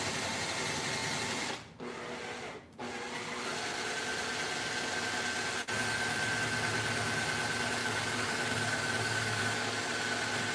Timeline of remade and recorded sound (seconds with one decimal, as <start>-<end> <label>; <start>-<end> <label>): 0.0-7.8 recorded; 7.8-9.4 remade; 9.4-10.5 recorded